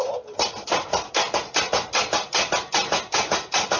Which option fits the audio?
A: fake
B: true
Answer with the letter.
B